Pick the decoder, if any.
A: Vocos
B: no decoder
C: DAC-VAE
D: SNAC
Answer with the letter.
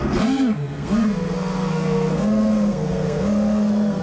D